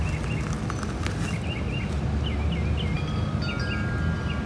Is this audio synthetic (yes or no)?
no